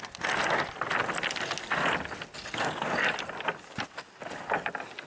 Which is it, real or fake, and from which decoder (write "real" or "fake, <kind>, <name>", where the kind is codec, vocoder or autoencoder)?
real